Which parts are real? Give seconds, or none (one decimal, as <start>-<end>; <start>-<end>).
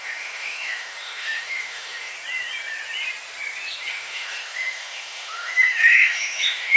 2.1-3.9